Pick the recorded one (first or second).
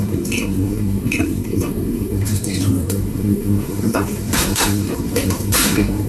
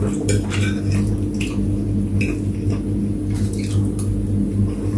second